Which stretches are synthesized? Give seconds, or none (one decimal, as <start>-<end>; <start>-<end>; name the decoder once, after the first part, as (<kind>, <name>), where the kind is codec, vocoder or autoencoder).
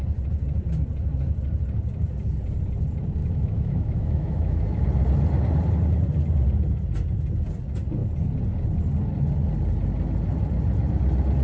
3.2-4.8 (autoencoder, DAC-VAE)